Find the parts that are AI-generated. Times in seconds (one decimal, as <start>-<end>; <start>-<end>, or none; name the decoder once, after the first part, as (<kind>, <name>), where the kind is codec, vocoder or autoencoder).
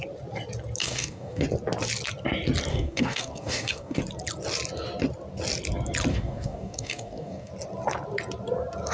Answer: 0.8-1.4 (codec, DAC); 2.7-4.0; 6.1-7.5